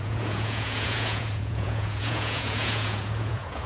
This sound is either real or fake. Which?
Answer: fake